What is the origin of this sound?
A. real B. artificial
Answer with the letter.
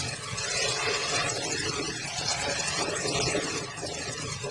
A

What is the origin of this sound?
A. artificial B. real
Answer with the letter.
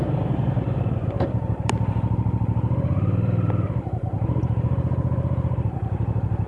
A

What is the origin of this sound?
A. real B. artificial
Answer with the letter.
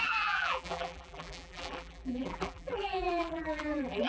B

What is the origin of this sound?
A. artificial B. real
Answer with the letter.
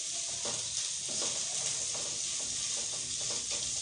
B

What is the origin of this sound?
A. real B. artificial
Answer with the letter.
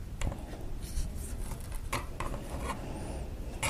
A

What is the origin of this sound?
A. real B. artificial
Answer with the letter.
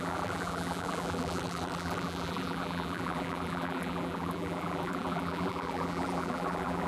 B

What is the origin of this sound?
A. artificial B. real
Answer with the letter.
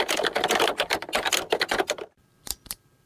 A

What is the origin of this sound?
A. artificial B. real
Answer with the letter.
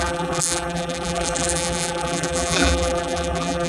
A